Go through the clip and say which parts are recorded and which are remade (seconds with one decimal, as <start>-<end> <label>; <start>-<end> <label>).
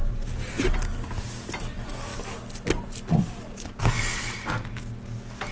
0.0-0.7 remade; 0.7-5.5 recorded